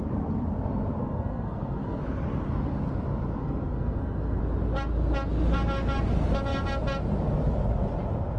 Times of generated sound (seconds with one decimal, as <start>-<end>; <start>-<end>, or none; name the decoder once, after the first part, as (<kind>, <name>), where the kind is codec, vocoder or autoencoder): 1.0-2.0 (codec, SNAC); 3.4-4.4